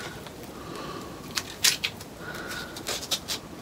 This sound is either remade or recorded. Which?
recorded